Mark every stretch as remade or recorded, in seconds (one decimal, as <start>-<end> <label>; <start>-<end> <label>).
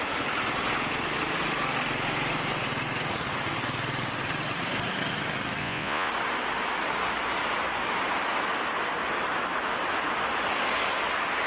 0.0-5.6 recorded; 5.6-6.1 remade; 6.1-11.5 recorded